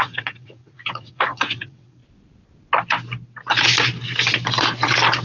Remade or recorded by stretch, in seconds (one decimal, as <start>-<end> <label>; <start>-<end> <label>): 0.0-2.0 remade; 2.0-5.2 recorded